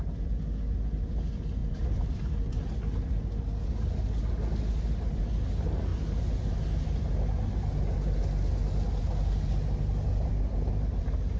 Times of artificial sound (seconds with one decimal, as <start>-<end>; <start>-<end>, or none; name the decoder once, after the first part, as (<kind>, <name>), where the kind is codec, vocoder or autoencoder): none